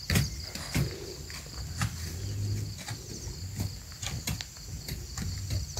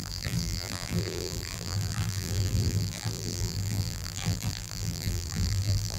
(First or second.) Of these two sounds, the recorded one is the first